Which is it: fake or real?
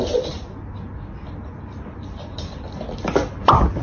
real